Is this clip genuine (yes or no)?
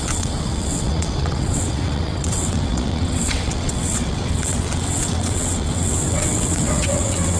no